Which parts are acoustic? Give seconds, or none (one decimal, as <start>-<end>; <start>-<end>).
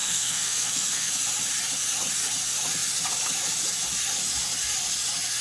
1.1-5.4